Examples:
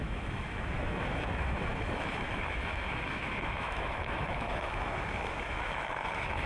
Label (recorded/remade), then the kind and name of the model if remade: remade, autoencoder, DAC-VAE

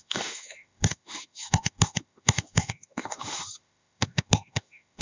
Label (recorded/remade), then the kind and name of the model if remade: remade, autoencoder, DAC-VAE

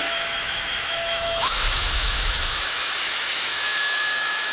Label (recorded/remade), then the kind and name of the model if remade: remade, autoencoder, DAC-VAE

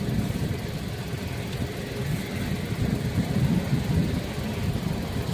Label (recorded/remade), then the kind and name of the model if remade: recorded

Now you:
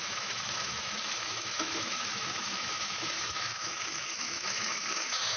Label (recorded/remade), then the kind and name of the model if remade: remade, autoencoder, DAC-VAE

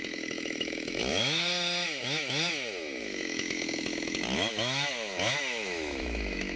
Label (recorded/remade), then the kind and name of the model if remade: remade, autoencoder, DAC-VAE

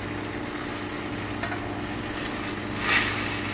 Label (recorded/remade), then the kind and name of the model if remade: recorded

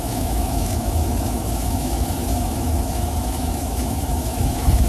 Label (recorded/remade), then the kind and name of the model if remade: remade, autoencoder, DAC-VAE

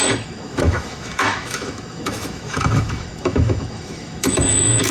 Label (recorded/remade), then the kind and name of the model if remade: remade, autoencoder, DAC-VAE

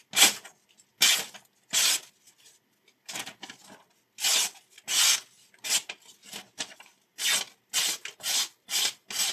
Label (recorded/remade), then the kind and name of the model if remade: recorded